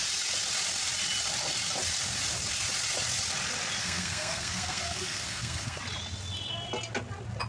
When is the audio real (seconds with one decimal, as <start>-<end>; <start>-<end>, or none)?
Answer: 0.0-3.8; 5.8-7.5